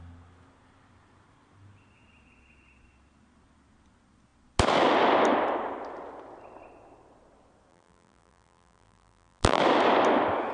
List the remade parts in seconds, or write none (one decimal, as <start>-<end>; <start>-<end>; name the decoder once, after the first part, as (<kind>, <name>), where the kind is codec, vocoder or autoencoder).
7.7-9.6 (vocoder, BigVGAN v2)